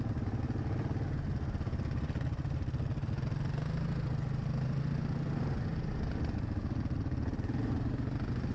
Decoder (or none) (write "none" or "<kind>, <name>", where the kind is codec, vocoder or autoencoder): none